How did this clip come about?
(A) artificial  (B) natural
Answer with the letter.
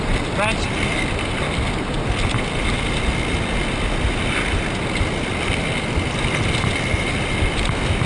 B